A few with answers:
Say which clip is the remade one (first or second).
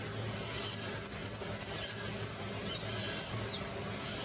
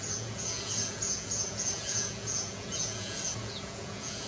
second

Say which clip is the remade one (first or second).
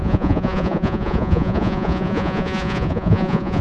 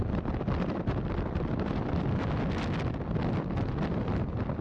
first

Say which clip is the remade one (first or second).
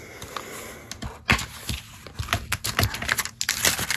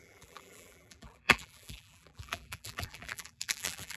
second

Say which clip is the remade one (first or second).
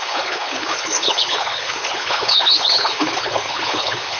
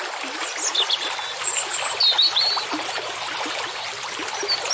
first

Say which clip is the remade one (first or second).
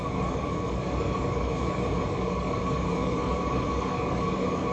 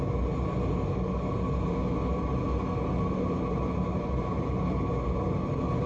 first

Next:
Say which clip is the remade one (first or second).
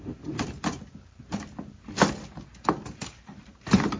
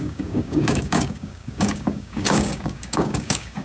second